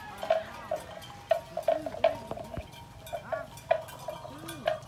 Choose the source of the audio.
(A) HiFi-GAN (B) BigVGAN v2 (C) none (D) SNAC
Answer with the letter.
C